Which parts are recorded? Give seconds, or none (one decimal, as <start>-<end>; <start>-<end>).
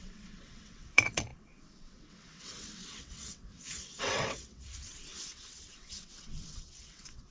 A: none